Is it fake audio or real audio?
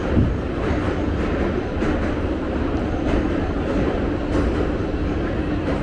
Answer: fake